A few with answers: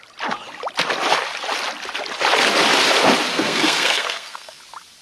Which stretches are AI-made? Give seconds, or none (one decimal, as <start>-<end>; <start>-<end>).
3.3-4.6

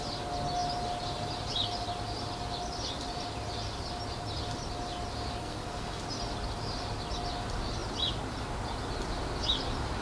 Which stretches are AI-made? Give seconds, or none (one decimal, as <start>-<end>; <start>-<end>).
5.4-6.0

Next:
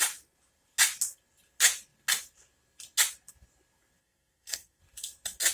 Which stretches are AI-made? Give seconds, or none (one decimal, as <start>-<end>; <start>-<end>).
4.0-4.8